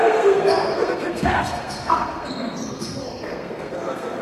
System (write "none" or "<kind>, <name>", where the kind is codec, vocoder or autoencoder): codec, SNAC